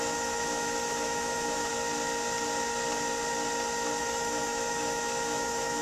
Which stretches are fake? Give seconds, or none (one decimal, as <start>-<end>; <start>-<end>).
0.0-1.7; 4.0-5.8